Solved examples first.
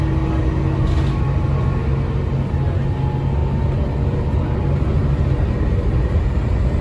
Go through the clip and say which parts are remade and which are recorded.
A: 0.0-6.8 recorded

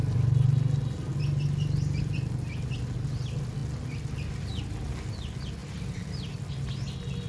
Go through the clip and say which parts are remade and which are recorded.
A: 0.0-7.3 recorded

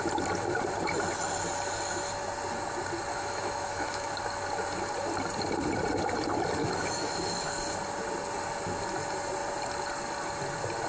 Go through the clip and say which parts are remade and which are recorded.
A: 0.0-3.1 recorded; 3.1-4.1 remade; 4.1-6.6 recorded; 6.6-7.5 remade; 7.5-10.9 recorded

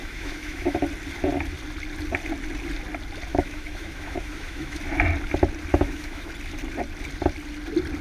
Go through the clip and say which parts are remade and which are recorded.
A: 0.0-0.8 remade; 0.8-3.3 recorded; 3.3-4.8 remade; 4.8-5.7 recorded; 5.7-6.3 remade; 6.3-8.0 recorded

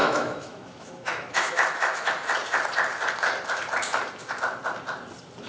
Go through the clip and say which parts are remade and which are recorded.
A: 0.0-2.1 remade; 2.1-5.5 recorded

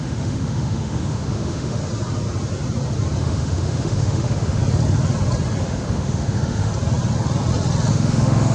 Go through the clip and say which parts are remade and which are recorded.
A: 0.0-1.8 remade; 1.8-3.2 recorded; 3.2-4.6 remade; 4.6-5.6 recorded; 5.6-6.7 remade; 6.7-7.9 recorded; 7.9-8.5 remade